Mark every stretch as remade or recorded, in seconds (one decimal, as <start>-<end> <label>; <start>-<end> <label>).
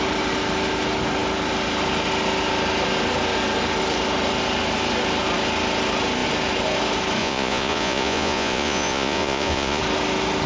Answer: 0.0-7.2 recorded; 7.2-9.8 remade; 9.8-10.5 recorded